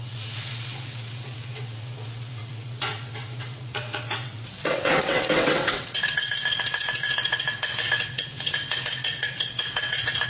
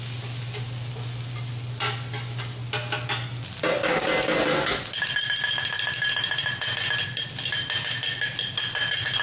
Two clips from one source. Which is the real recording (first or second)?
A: second